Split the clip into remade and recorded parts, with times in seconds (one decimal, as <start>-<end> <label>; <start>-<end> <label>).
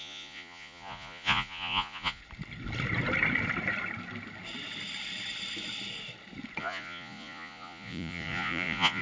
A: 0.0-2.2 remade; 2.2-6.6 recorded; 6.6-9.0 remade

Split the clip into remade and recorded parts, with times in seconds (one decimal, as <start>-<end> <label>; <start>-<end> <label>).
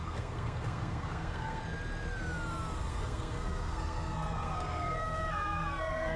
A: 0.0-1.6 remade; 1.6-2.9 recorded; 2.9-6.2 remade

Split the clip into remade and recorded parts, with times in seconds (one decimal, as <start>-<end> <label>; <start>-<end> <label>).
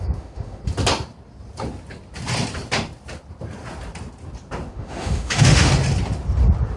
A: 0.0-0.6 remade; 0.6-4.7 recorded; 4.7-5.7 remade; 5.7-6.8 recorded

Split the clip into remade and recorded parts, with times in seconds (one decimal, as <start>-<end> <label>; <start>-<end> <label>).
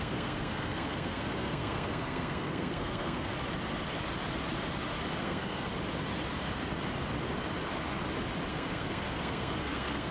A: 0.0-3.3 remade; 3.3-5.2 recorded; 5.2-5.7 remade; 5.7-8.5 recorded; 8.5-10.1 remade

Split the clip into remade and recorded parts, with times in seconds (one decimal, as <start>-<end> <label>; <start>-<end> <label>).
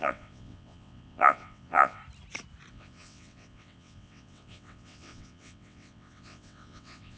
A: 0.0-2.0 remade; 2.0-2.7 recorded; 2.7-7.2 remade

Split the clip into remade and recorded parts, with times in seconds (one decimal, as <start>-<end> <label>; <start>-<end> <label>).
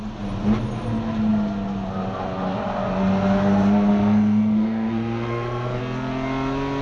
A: 0.0-3.9 recorded; 3.9-5.8 remade; 5.8-6.8 recorded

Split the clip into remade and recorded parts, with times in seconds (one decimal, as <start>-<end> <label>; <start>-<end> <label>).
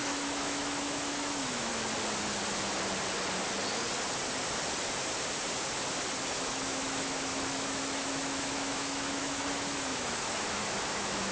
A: 0.0-1.7 remade; 1.7-6.3 recorded; 6.3-11.3 remade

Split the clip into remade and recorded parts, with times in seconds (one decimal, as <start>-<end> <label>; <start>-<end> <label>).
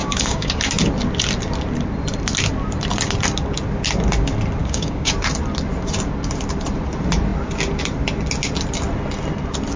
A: 0.0-0.7 remade; 0.7-4.6 recorded; 4.6-5.1 remade; 5.1-9.8 recorded